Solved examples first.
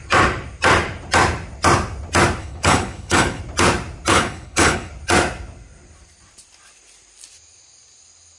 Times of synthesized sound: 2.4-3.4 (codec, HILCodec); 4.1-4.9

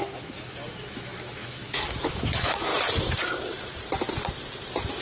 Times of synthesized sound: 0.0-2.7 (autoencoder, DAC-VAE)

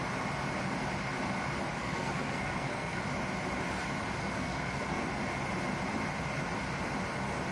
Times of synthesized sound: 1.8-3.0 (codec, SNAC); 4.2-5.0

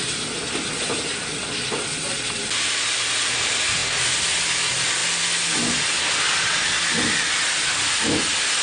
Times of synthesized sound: none

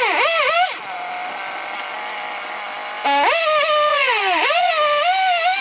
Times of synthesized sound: 3.9-4.7 (vocoder, Vocos)